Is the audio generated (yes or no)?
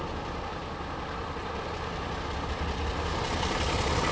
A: no